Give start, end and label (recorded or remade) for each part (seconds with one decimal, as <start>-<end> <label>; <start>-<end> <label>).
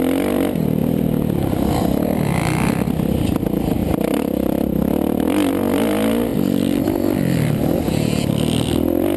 0.0-3.8 recorded; 3.8-5.5 remade; 5.5-6.3 recorded; 6.3-8.3 remade; 8.3-9.2 recorded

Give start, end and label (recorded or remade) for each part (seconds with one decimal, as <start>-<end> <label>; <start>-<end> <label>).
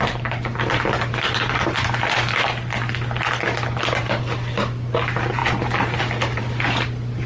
0.0-7.3 remade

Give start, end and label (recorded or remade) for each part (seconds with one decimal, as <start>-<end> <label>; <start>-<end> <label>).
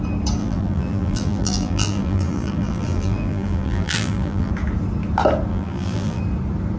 0.0-0.4 recorded; 0.4-4.5 remade; 4.5-5.5 recorded; 5.5-6.2 remade; 6.2-6.8 recorded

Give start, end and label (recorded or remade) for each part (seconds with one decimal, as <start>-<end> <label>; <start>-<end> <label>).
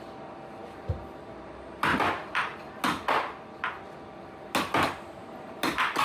0.0-6.0 recorded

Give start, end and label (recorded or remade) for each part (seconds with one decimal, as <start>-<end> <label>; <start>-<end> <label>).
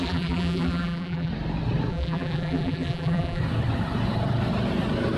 0.0-1.3 remade; 1.3-1.9 recorded; 1.9-3.4 remade; 3.4-5.2 recorded